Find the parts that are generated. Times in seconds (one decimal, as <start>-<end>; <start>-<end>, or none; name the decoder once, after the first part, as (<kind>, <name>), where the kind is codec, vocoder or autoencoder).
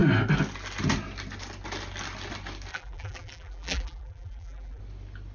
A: 2.7-4.8 (vocoder, BigVGAN v2)